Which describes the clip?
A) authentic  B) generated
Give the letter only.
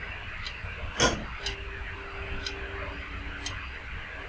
A